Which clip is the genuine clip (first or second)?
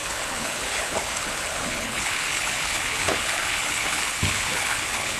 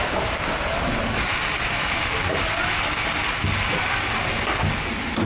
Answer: second